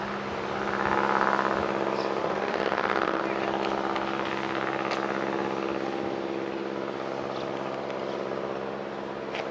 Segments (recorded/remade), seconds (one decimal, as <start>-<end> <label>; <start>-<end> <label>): 0.0-2.2 recorded; 2.2-3.2 remade; 3.2-9.5 recorded